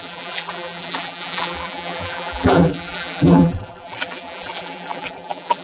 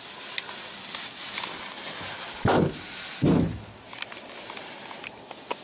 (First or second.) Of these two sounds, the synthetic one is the first